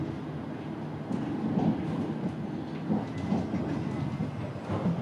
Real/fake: real